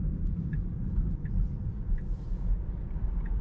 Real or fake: fake